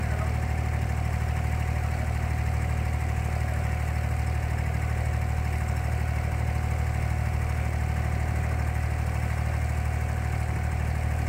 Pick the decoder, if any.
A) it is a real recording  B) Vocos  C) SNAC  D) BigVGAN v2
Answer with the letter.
A